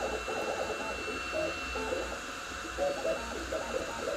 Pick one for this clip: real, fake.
real